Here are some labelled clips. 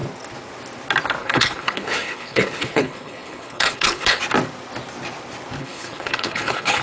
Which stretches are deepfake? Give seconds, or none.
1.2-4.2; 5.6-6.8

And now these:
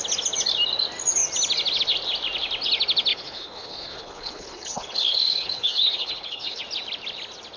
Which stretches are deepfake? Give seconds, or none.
3.1-6.6

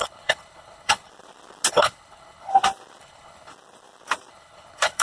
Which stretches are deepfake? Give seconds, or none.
0.0-1.1; 1.7-2.5; 3.0-3.5; 4.3-5.0

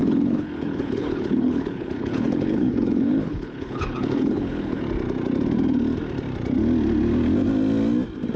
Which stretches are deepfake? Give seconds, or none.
0.0-4.8

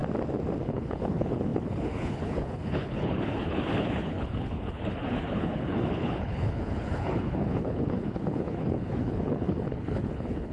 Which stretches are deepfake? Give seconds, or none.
0.6-10.5

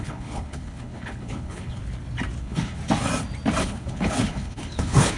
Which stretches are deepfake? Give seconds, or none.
0.0-1.8; 2.4-2.8; 3.6-5.2

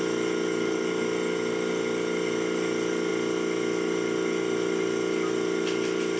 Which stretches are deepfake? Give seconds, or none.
none

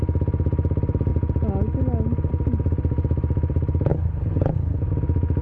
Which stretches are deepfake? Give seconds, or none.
3.9-4.8